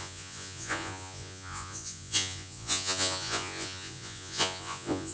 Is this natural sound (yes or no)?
no